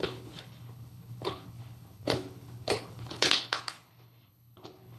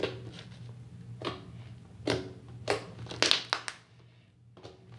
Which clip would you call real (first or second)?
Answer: second